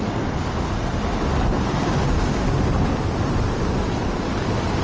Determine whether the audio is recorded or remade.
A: recorded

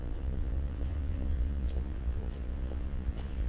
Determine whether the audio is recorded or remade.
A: remade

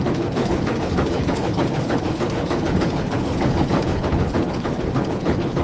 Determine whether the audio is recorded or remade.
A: remade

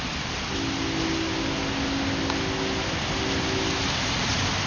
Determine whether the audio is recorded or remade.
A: recorded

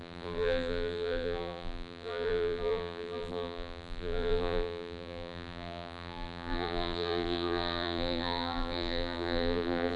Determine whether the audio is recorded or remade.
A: remade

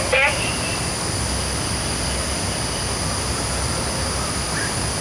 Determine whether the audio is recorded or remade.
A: recorded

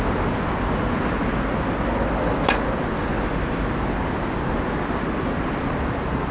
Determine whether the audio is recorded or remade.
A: recorded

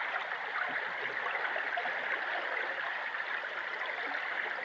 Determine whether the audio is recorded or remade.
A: recorded